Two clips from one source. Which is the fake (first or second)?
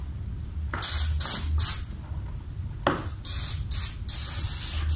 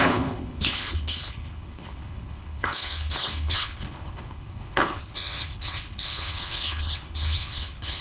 second